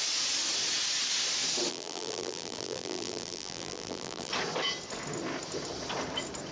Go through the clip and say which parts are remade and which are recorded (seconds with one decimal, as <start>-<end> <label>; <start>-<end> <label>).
0.0-1.7 recorded; 1.7-4.3 remade; 4.3-6.5 recorded